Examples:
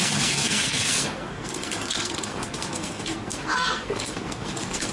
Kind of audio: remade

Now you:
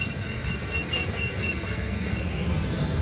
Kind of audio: remade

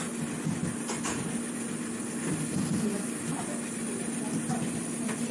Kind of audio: recorded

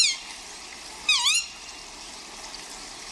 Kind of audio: recorded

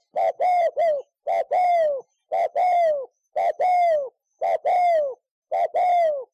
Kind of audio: recorded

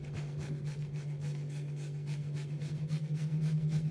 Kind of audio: remade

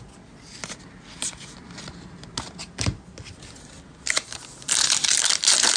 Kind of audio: recorded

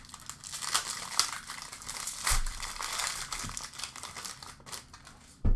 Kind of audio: recorded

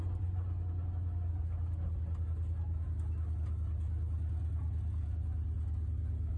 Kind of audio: recorded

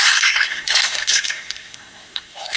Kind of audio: remade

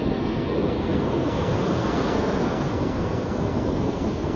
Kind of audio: remade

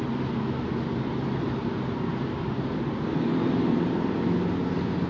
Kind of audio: recorded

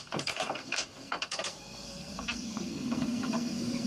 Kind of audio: remade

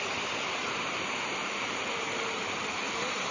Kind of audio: recorded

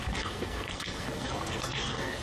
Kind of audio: remade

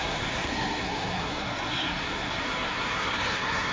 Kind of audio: remade